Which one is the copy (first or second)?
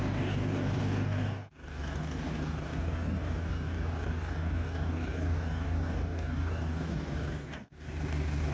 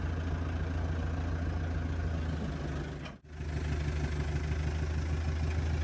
first